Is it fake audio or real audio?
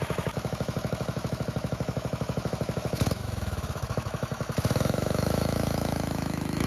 fake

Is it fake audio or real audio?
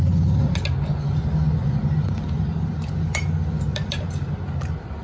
real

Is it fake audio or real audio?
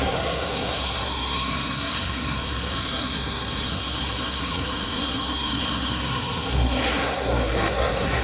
fake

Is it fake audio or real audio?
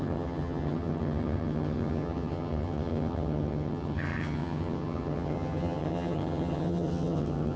fake